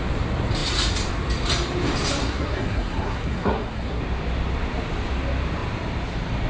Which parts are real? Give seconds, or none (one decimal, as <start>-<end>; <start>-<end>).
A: 0.0-2.2; 4.0-6.5